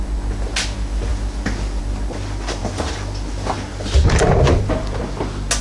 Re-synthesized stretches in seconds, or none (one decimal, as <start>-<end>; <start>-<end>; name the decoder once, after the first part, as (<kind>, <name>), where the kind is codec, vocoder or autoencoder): none